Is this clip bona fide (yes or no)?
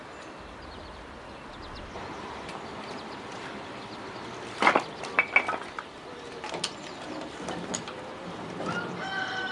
yes